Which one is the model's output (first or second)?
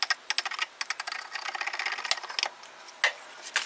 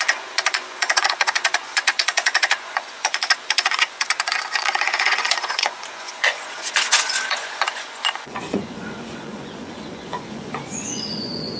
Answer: second